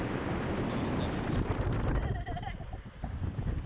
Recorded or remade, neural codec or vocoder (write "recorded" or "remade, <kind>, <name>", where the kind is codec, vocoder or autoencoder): recorded